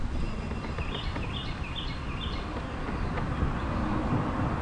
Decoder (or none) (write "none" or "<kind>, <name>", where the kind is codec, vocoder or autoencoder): none